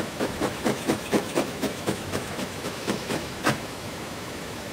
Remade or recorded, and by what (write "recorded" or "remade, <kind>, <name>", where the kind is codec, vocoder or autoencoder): remade, autoencoder, DAC-VAE